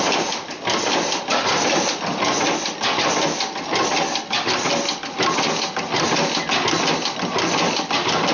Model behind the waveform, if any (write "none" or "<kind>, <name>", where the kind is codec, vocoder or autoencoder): none